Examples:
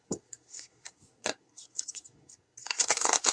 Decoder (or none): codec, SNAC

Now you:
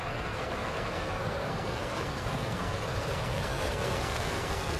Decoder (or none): codec, SNAC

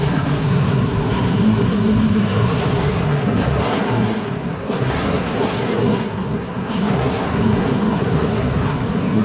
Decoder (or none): codec, SNAC